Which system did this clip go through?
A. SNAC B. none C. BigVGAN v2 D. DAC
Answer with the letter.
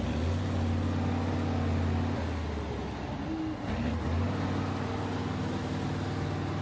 B